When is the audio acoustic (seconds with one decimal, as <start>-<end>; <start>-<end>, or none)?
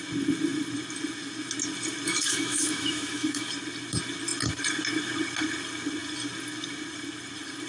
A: 0.0-2.1; 3.5-7.7